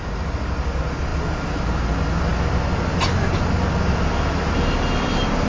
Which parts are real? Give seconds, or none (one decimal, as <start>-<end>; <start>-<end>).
0.0-5.5